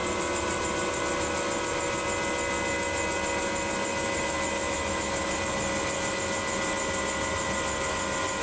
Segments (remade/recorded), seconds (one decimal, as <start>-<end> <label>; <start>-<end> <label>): 0.0-8.4 recorded